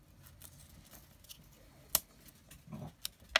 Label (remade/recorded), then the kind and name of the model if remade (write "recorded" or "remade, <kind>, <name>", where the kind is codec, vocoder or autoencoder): recorded